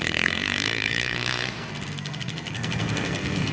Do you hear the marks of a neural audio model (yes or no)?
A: yes